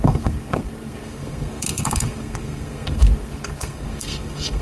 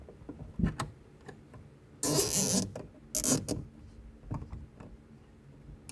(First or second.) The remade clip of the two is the first